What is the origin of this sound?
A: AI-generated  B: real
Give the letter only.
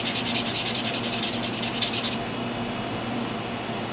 B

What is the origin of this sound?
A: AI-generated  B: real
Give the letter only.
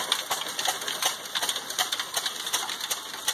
B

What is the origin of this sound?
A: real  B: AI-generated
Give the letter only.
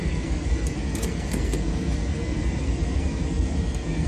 B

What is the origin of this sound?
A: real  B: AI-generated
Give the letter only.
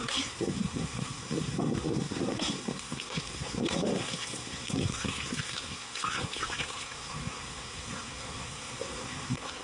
B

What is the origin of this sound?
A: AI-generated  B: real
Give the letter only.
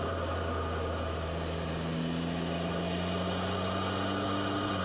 B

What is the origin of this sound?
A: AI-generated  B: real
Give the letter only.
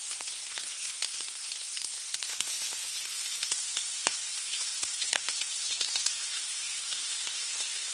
A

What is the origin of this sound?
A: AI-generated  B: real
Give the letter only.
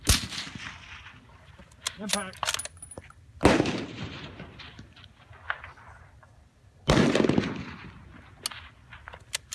B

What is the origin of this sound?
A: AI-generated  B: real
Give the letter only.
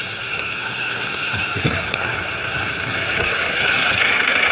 A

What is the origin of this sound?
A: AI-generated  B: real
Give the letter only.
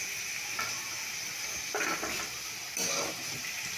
B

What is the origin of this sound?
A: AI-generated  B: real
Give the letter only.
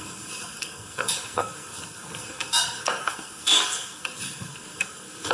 A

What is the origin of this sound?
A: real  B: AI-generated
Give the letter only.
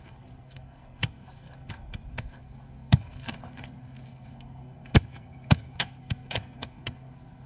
B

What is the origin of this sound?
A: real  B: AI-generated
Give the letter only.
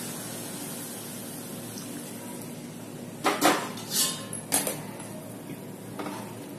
A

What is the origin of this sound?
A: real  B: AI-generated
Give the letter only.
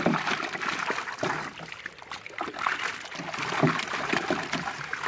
A